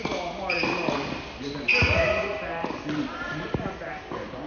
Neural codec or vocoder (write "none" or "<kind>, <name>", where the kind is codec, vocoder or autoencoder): none